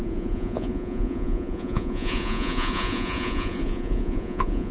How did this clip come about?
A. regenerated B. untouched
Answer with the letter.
A